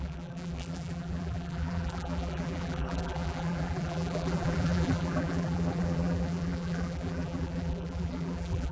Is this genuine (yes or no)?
no